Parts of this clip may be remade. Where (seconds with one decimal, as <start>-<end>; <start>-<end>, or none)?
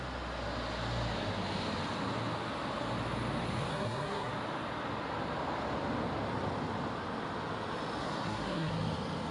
3.7-4.3; 8.0-8.7